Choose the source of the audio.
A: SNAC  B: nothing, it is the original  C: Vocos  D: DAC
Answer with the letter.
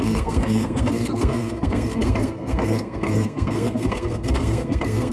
A